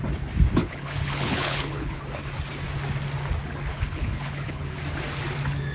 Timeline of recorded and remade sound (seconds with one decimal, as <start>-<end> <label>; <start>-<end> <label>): 0.0-0.6 recorded; 0.6-2.0 remade; 2.0-3.7 recorded; 3.7-4.8 remade; 4.8-5.7 recorded